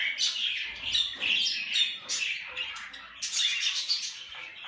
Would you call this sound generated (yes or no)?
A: no